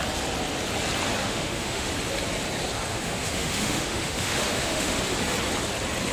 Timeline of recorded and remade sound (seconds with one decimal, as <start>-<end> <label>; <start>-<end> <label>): 0.0-1.2 recorded; 1.2-1.9 remade; 1.9-2.9 recorded; 2.9-5.0 remade; 5.0-6.1 recorded